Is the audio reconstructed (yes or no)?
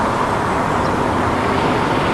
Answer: no